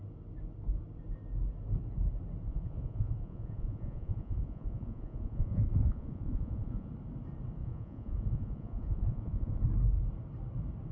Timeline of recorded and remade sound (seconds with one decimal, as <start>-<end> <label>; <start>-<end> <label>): 0.0-2.5 recorded; 2.5-6.9 remade; 6.9-7.6 recorded; 7.6-9.6 remade; 9.6-10.9 recorded